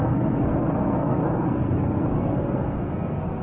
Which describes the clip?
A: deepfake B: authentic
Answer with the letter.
A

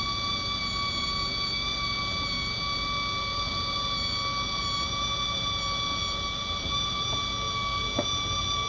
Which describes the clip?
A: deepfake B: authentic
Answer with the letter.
B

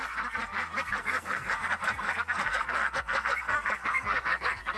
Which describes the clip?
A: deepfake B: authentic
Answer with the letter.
A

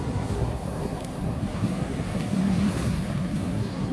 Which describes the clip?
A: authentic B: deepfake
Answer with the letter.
B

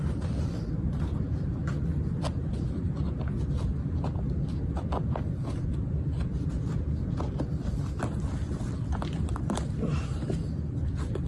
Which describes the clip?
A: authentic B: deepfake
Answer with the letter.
A